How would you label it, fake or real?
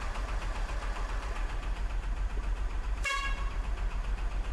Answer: fake